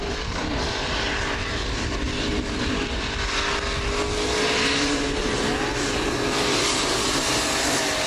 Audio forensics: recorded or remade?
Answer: recorded